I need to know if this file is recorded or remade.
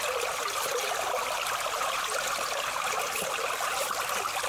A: recorded